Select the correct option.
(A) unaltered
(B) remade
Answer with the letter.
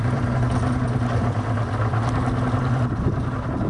A